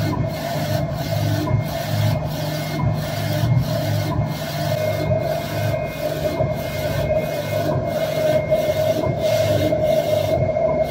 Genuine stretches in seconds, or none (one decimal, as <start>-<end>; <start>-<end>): 1.1-6.3; 7.2-8.3